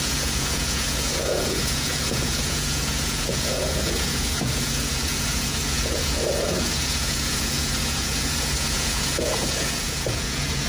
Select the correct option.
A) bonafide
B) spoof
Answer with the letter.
B